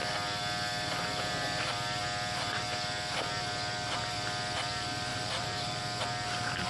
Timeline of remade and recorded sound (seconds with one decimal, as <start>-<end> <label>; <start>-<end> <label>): 0.0-5.1 recorded; 5.1-5.8 remade; 5.8-6.7 recorded